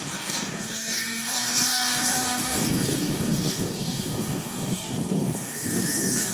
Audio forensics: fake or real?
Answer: fake